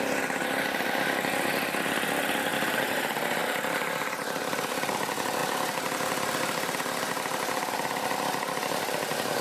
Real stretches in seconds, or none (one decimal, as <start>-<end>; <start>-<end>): 0.0-2.5; 3.0-5.4; 7.7-9.4